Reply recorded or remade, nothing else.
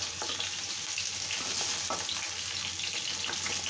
recorded